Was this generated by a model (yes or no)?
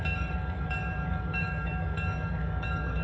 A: yes